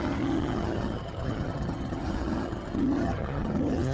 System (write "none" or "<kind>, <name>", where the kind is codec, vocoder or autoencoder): vocoder, HiFi-GAN